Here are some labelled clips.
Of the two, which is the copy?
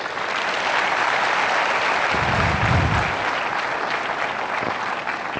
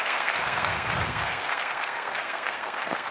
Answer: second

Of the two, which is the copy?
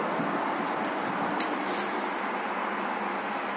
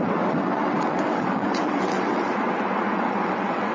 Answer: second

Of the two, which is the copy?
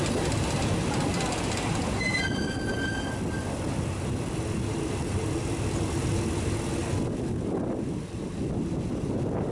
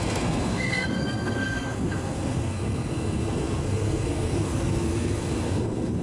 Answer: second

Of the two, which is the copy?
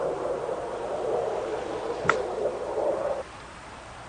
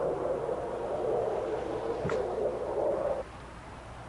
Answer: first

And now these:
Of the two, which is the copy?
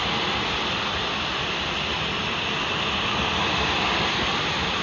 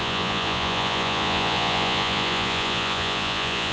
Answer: second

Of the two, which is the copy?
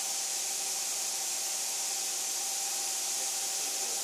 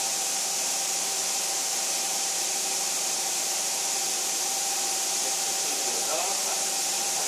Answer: second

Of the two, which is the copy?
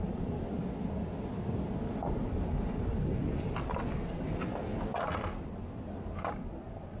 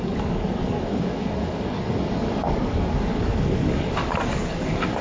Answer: second